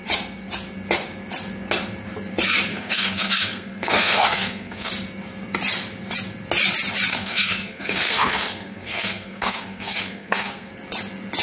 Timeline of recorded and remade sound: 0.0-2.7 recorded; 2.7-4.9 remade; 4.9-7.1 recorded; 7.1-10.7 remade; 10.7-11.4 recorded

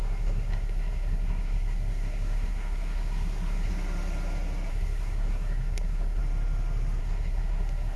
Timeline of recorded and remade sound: 0.0-3.7 remade; 3.7-4.7 recorded; 4.7-6.2 remade; 6.2-7.0 recorded; 7.0-8.0 remade

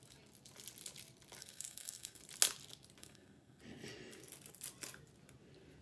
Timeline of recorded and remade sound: 0.0-1.4 recorded; 1.4-2.2 remade; 2.2-3.0 recorded; 3.0-3.6 remade; 3.6-5.8 recorded

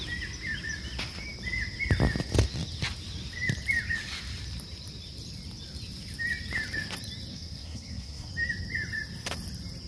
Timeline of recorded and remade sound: 0.0-7.3 recorded; 7.3-8.3 remade; 8.3-9.9 recorded

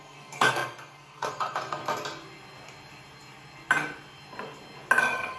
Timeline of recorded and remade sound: 0.0-1.8 remade; 1.8-5.0 recorded; 5.0-5.4 remade